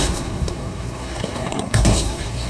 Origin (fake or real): fake